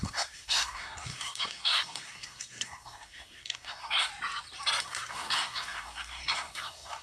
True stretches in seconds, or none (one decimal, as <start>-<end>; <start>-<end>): 4.1-4.8

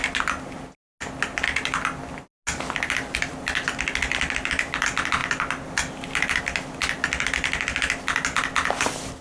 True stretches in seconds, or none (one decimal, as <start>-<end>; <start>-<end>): 0.0-9.2

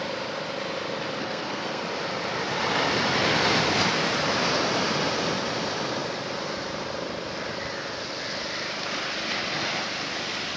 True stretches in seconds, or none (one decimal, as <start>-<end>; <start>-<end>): 0.0-1.2; 1.8-10.6

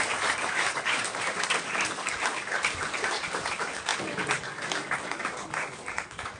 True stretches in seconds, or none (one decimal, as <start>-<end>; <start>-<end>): none

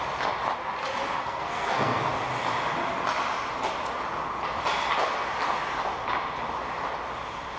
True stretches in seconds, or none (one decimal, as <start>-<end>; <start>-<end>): 0.0-1.2; 2.1-7.6

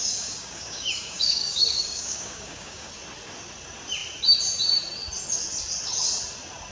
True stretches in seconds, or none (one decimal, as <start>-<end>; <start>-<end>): 2.9-6.7

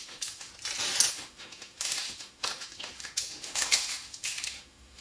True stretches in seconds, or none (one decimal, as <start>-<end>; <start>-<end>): 0.5-1.1